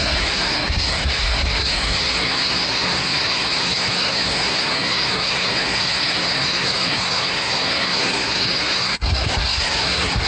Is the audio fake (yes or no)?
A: yes